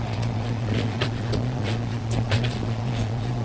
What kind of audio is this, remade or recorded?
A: remade